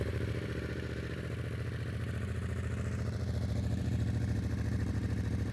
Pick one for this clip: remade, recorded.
remade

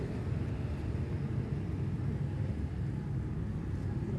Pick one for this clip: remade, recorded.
recorded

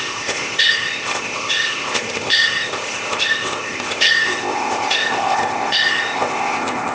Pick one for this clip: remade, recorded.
remade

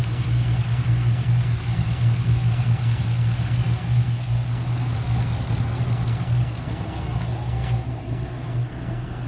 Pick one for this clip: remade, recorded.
remade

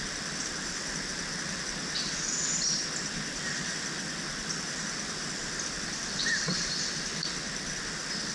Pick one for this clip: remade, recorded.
recorded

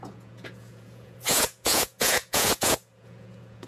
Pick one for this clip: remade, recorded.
remade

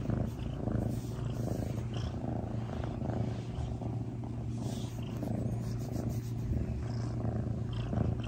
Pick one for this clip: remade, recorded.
recorded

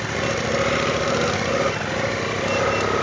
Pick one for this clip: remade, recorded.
recorded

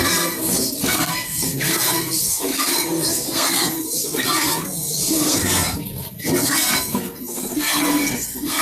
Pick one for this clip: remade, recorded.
remade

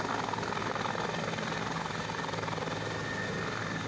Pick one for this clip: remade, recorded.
recorded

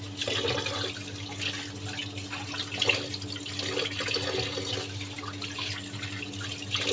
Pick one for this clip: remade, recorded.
recorded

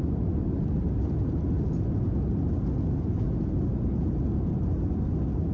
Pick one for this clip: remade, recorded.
recorded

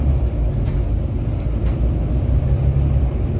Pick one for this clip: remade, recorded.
recorded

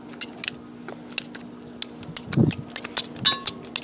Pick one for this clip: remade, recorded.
recorded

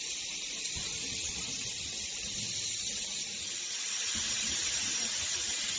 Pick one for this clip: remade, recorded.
remade